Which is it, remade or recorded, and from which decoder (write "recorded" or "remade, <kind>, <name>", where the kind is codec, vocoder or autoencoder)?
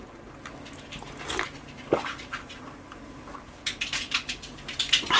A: recorded